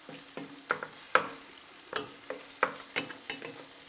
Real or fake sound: real